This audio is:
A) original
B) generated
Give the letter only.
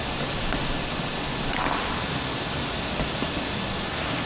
A